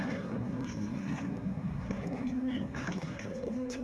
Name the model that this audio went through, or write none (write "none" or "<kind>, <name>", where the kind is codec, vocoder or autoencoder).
codec, SNAC